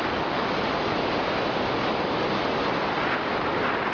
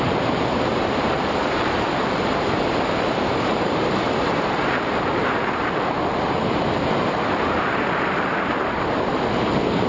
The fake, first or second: second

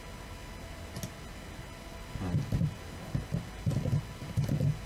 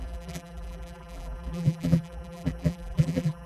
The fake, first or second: second